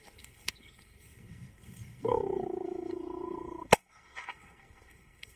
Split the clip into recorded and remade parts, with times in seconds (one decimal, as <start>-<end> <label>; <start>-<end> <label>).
0.0-5.4 remade